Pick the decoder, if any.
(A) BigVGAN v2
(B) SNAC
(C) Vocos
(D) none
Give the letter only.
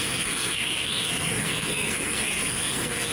B